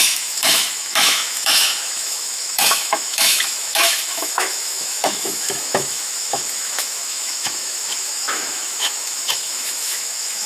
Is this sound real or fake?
fake